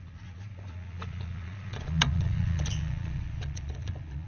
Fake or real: fake